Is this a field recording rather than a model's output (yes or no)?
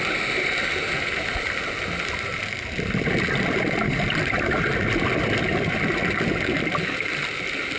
yes